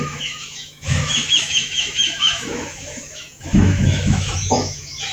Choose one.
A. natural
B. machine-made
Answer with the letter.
B